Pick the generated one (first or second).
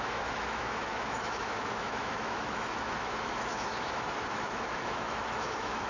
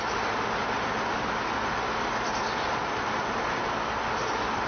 first